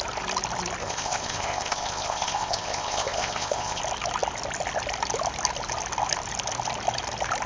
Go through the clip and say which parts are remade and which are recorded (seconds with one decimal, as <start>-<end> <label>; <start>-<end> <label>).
0.0-0.8 recorded; 0.8-3.8 remade; 3.8-7.5 recorded